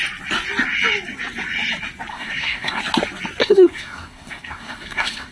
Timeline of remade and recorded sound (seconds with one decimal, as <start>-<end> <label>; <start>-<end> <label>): 0.0-2.1 recorded; 2.1-2.8 remade; 2.8-3.4 recorded; 3.4-5.3 remade